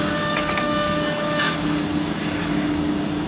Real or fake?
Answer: fake